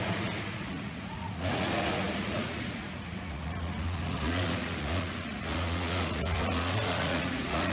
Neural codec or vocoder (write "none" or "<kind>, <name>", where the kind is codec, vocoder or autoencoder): vocoder, Vocos